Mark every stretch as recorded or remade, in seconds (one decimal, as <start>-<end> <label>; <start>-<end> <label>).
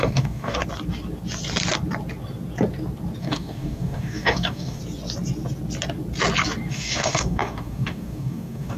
0.0-0.6 remade; 0.6-3.2 recorded; 3.2-4.8 remade; 4.8-6.7 recorded; 6.7-8.8 remade